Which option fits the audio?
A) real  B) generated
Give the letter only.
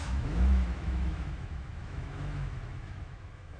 B